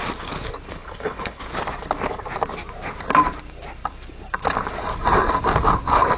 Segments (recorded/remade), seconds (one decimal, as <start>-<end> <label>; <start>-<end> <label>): 0.0-0.7 recorded; 0.7-1.4 remade; 1.4-6.2 recorded